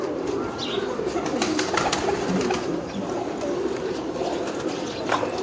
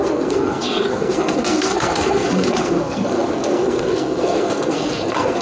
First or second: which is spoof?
second